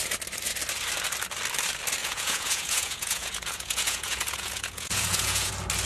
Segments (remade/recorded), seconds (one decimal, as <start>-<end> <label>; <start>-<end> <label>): 0.0-2.0 recorded; 2.0-5.5 remade; 5.5-5.9 recorded